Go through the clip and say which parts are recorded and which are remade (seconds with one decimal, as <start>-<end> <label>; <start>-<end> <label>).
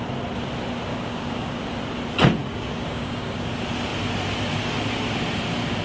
0.0-0.9 recorded; 0.9-1.6 remade; 1.6-2.4 recorded; 2.4-3.5 remade; 3.5-5.8 recorded